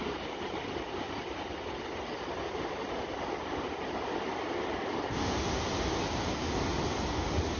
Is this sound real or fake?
real